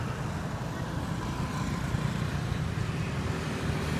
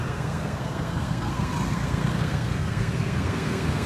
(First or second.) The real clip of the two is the first